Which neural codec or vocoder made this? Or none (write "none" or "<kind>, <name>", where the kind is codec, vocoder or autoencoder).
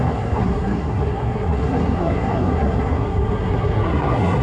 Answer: codec, SNAC